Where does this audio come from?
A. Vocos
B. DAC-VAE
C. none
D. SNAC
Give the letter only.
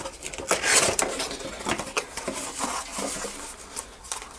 C